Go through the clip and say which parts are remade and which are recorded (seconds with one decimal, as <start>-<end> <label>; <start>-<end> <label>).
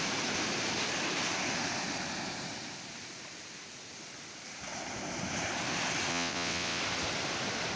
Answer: 0.0-6.1 recorded; 6.1-6.8 remade; 6.8-7.8 recorded